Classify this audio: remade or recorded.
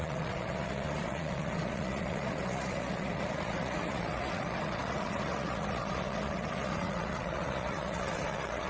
remade